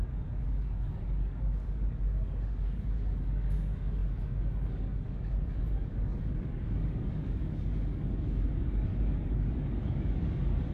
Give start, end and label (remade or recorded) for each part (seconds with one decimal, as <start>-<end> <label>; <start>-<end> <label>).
0.0-10.7 remade